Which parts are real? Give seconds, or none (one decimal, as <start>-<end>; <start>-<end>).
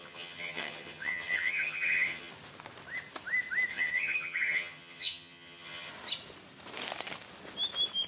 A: 2.3-3.7; 5.9-8.1